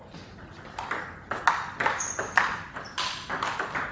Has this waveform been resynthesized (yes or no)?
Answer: no